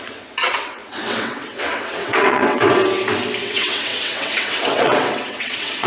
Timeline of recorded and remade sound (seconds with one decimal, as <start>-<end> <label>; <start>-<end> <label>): 0.0-2.8 remade; 2.8-3.4 recorded; 3.4-5.9 remade